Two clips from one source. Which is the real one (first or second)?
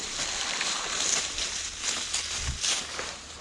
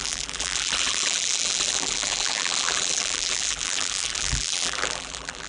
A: first